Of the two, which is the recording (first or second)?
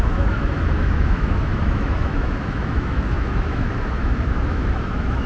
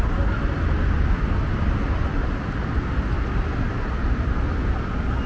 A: second